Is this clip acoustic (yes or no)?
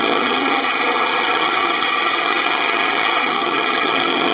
no